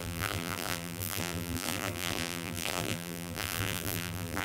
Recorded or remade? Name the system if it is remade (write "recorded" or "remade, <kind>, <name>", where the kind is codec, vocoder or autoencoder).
remade, vocoder, BigVGAN v2